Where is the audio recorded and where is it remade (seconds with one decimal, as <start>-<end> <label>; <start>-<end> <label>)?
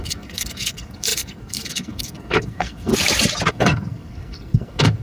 0.0-2.9 remade; 2.9-3.5 recorded; 3.5-5.0 remade